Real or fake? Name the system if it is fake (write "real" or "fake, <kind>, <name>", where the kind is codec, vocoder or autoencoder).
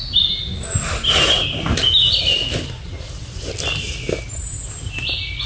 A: real